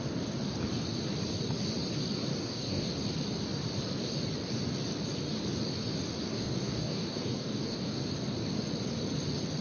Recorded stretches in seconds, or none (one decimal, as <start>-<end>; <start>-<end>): 0.0-2.3; 2.9-6.3; 8.0-9.6